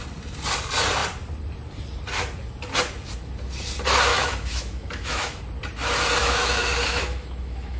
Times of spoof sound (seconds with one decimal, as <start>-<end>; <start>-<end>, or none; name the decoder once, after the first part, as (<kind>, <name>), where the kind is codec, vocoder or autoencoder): 4.1-5.4 (autoencoder, DAC-VAE); 6.2-7.8